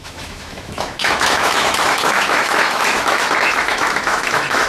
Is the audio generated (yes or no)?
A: yes